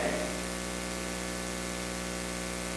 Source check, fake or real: real